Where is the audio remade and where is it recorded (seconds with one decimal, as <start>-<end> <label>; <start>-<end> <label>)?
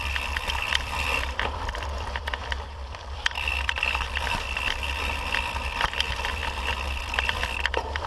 0.0-6.4 remade; 6.4-6.9 recorded; 6.9-8.1 remade